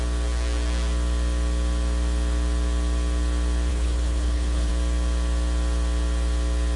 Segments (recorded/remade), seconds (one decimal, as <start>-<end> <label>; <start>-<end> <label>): 0.0-3.7 recorded; 3.7-4.7 remade; 4.7-6.8 recorded

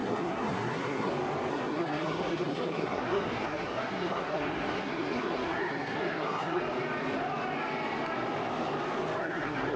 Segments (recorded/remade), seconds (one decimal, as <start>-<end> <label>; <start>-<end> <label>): 0.0-1.1 remade; 1.1-1.5 recorded; 1.5-6.6 remade; 6.6-9.2 recorded; 9.2-9.8 remade

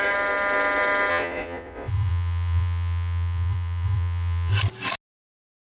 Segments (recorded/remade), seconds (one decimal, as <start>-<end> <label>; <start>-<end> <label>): 0.0-1.1 recorded; 1.1-4.5 remade; 4.5-5.6 recorded

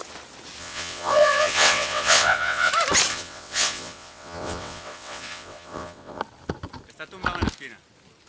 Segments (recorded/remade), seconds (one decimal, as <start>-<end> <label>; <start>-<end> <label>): 0.0-0.6 recorded; 0.6-2.7 remade; 2.7-3.1 recorded; 3.1-6.2 remade; 6.2-8.3 recorded

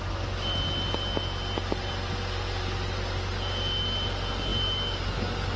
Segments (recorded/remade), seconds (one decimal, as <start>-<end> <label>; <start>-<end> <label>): 0.0-5.6 recorded

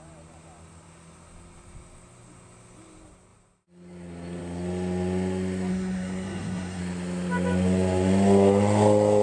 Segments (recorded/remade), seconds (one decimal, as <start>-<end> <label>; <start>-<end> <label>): 0.0-5.7 recorded; 5.7-6.8 remade; 6.8-9.2 recorded